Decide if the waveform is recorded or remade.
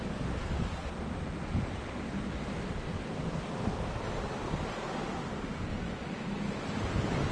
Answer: recorded